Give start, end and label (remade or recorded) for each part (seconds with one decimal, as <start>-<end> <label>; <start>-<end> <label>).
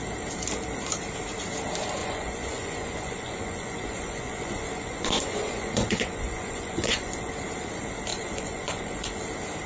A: 0.0-2.0 recorded; 2.0-7.3 remade; 7.3-8.1 recorded; 8.1-9.2 remade; 9.2-9.7 recorded